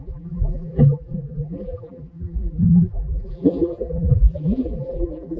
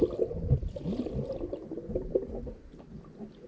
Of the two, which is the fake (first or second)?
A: first